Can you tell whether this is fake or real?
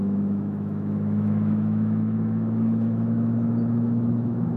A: fake